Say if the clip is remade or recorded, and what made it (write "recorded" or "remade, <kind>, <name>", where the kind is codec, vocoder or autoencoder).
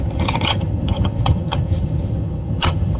remade, vocoder, HiFi-GAN